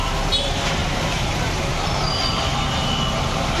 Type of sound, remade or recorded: recorded